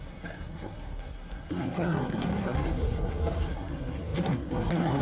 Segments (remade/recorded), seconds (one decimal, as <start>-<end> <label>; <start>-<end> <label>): 0.0-5.0 remade

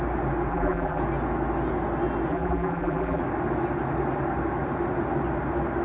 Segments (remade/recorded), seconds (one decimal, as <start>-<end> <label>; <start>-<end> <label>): 0.0-0.5 recorded; 0.5-1.0 remade; 1.0-2.3 recorded; 2.3-3.2 remade; 3.2-5.8 recorded